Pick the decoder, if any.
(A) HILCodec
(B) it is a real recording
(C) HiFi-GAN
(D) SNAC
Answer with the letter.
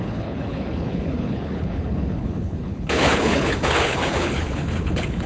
A